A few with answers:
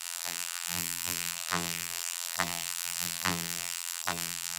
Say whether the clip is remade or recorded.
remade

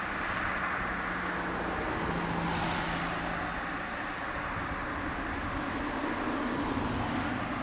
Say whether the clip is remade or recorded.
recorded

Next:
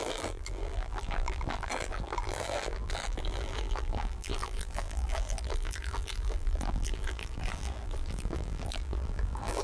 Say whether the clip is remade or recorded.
remade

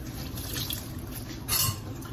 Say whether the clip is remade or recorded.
recorded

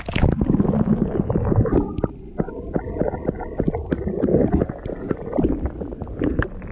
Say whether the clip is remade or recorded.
recorded